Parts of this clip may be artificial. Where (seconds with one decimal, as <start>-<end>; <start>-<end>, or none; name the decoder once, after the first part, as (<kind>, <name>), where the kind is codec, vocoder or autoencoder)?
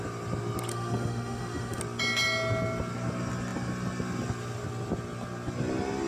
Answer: 0.7-1.8 (autoencoder, DAC-VAE)